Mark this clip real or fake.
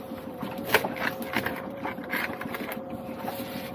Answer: fake